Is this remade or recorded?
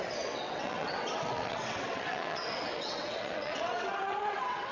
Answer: remade